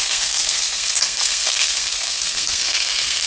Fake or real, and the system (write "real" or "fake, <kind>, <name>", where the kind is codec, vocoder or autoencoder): fake, codec, SNAC